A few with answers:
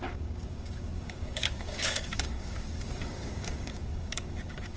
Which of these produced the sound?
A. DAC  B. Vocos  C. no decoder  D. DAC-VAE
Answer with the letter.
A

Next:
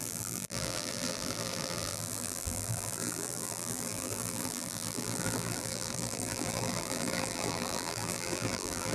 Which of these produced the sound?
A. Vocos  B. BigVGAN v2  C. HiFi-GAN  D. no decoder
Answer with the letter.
B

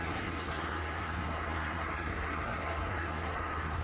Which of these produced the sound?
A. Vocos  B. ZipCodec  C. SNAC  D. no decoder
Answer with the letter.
C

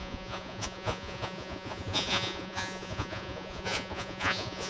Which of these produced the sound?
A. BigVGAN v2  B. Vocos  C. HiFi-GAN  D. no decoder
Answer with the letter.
B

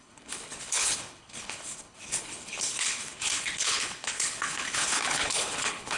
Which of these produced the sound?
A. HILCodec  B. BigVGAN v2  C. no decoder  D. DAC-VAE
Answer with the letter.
A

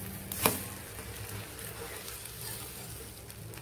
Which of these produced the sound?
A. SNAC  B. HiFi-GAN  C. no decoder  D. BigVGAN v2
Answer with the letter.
C